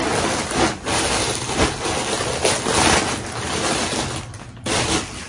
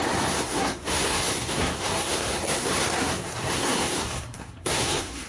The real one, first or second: first